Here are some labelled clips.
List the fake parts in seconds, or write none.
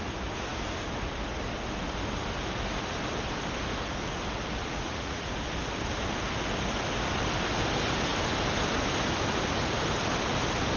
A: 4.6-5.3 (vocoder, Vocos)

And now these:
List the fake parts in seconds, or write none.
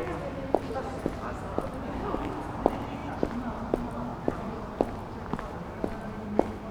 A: 1.8-2.4 (codec, DAC)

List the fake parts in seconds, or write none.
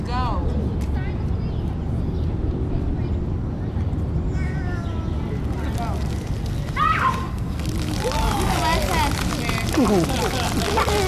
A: 7.2-7.7 (codec, SNAC)